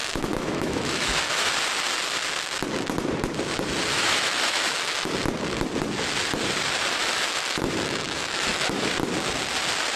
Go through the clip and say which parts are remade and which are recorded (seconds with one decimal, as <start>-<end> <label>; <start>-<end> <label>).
0.0-1.5 remade; 1.5-3.9 recorded; 3.9-5.1 remade; 5.1-7.0 recorded; 7.0-8.9 remade; 8.9-10.0 recorded

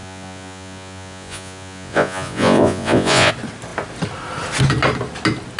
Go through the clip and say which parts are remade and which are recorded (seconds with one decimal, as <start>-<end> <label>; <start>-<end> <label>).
0.0-3.3 remade; 3.3-5.6 recorded

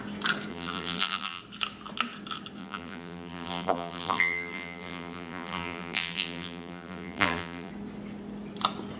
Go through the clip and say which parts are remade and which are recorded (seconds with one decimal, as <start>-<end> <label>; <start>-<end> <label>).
0.0-0.5 recorded; 0.5-1.4 remade; 1.4-2.6 recorded; 2.6-7.7 remade; 7.7-9.0 recorded

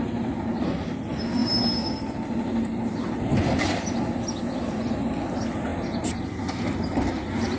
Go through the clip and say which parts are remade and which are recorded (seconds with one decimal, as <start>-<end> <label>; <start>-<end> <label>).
0.0-1.4 recorded; 1.4-4.9 remade; 4.9-7.6 recorded

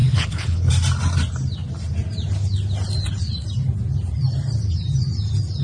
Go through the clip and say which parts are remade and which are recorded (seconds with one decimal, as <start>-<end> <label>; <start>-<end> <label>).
0.0-0.7 remade; 0.7-5.6 recorded

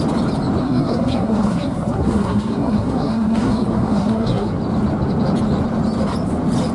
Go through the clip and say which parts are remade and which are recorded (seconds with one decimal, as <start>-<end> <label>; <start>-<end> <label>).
0.0-0.6 recorded; 0.6-4.6 remade; 4.6-6.7 recorded

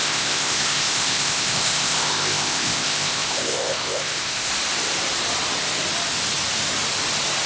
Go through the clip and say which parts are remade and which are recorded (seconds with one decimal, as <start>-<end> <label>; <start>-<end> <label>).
0.0-4.5 remade; 4.5-7.5 recorded